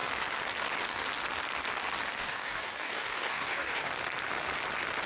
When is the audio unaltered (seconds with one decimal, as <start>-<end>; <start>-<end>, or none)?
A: 0.0-2.2; 3.9-5.1